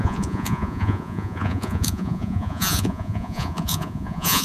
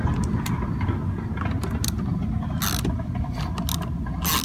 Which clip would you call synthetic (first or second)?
first